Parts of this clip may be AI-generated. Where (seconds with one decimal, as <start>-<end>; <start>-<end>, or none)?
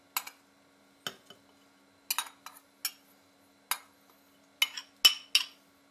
none